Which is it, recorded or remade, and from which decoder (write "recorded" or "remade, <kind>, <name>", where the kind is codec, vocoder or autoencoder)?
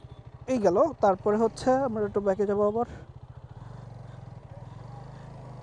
recorded